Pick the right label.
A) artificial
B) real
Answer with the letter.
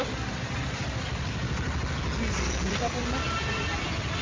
A